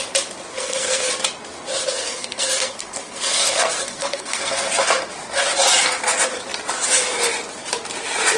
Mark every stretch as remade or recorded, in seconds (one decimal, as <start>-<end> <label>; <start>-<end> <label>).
0.0-0.5 recorded; 0.5-1.1 remade; 1.1-1.8 recorded; 1.8-4.7 remade; 4.7-8.4 recorded